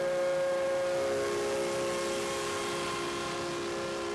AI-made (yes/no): no